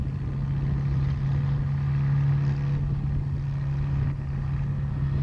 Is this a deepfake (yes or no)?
no